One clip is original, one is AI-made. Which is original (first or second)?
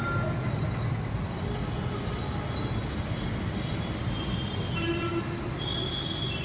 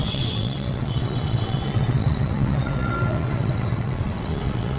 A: first